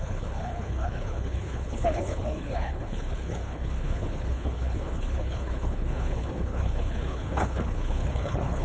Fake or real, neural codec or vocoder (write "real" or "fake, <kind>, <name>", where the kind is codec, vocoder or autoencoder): fake, codec, HILCodec